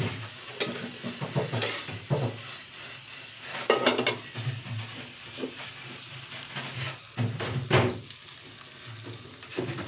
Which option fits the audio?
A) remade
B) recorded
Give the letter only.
B